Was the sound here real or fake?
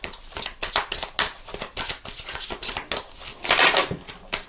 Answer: real